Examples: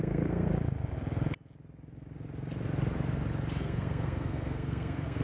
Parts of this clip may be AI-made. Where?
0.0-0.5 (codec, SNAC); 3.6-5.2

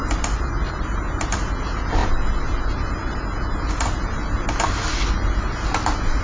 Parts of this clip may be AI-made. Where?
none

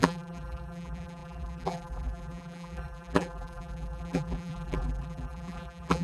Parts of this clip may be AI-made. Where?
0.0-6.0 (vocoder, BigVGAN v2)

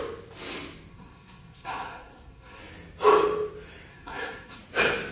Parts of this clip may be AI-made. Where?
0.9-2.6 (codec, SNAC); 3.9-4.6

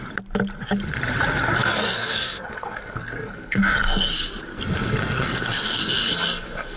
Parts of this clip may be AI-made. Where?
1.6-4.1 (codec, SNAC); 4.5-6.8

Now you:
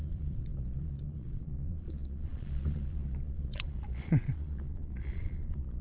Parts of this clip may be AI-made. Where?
0.0-5.8 (vocoder, Vocos)

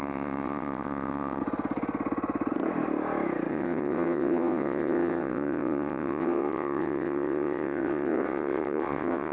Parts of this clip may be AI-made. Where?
0.0-1.4 (vocoder, WaveNeXt); 3.5-9.3

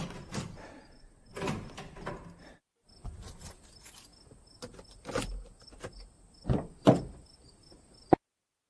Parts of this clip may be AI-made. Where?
none